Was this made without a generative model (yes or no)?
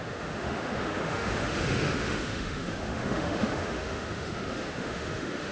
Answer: no